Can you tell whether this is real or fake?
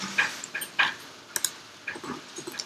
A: real